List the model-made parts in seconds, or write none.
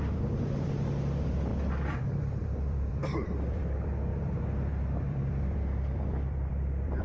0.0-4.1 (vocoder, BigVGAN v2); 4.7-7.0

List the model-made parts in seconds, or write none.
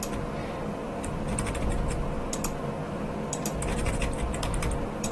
0.4-1.5 (vocoder, BigVGAN v2); 3.7-5.1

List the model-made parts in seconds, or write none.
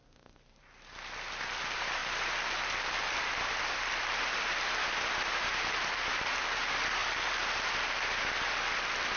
1.4-2.0 (vocoder, BigVGAN v2); 2.7-7.0; 7.7-9.2